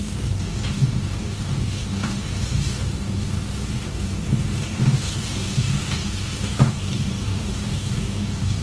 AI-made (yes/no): yes